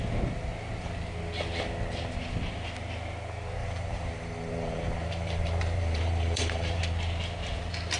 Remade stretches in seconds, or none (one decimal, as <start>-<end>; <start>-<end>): 3.6-6.8